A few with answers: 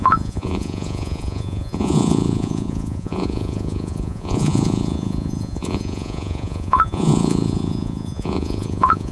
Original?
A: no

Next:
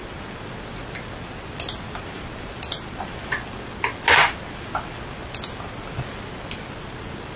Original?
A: yes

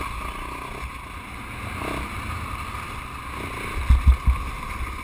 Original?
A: yes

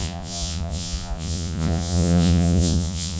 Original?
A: no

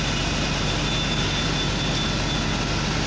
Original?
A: yes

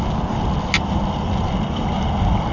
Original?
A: yes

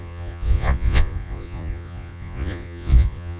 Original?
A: no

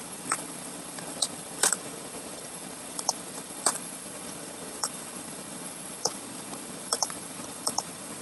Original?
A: no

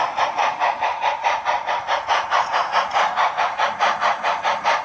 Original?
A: no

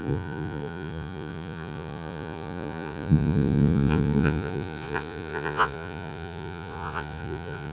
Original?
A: no